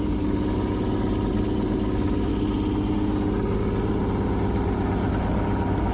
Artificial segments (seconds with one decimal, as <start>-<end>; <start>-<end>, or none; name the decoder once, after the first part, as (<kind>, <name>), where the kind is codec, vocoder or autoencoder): 0.0-2.3 (codec, DAC); 5.1-5.9